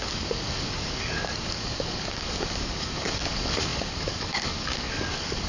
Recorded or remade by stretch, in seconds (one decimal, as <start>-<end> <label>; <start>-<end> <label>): 0.0-5.5 remade